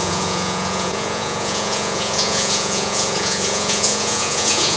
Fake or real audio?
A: fake